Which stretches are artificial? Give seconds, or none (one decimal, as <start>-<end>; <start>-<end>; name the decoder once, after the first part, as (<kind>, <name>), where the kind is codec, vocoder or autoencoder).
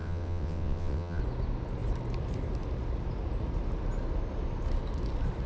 0.0-1.2 (vocoder, WaveNeXt)